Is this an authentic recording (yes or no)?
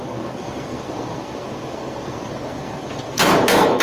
no